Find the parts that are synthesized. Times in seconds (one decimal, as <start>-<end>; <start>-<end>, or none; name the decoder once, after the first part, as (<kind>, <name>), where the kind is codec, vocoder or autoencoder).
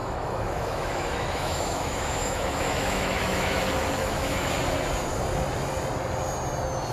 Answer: 0.0-3.6 (autoencoder, DAC-VAE); 4.0-4.5